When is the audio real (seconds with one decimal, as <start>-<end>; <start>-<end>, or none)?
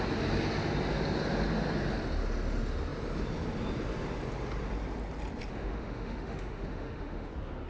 0.0-5.5; 7.3-7.7